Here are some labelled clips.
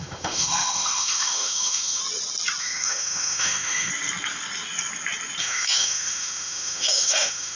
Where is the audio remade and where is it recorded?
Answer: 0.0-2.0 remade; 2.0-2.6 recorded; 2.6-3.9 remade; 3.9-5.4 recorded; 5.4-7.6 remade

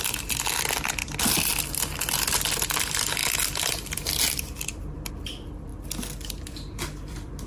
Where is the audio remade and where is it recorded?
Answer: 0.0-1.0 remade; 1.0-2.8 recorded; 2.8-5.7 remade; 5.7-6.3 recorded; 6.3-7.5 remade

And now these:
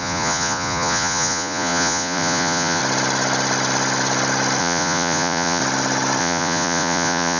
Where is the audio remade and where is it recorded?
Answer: 0.0-2.8 remade; 2.8-4.6 recorded; 4.6-5.6 remade; 5.6-6.2 recorded; 6.2-7.4 remade